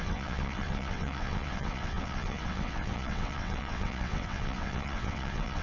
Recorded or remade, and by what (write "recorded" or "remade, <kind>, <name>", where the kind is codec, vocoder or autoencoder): remade, vocoder, WaveNeXt